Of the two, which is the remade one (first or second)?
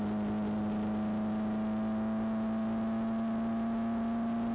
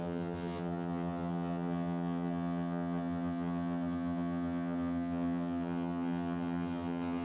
second